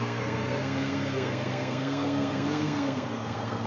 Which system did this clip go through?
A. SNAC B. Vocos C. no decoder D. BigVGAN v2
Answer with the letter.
A